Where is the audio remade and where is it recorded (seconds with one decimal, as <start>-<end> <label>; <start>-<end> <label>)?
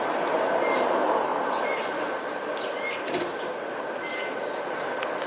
0.0-5.3 recorded